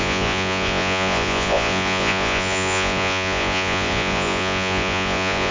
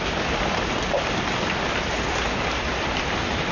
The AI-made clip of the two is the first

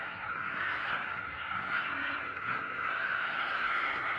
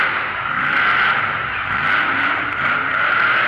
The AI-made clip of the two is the first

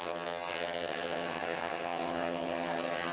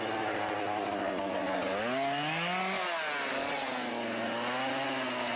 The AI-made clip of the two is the first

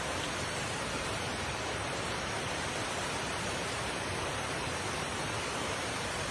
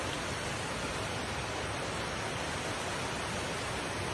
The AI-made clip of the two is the first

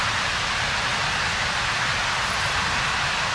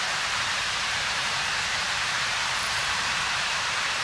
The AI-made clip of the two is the second